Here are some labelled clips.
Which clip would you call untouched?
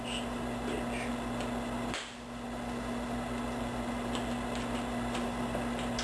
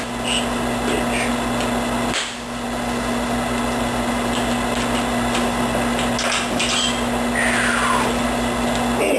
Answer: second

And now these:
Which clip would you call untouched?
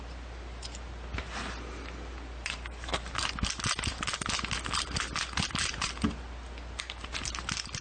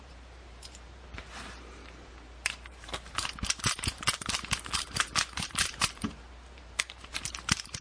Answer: first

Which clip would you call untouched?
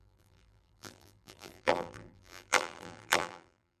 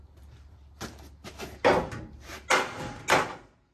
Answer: second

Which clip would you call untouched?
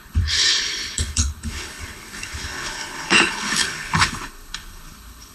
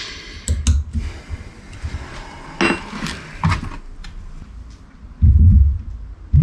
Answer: second